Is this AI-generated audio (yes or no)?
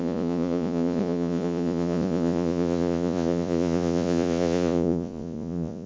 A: yes